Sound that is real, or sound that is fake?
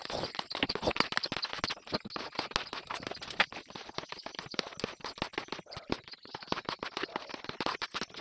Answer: real